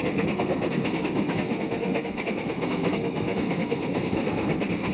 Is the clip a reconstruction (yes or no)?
yes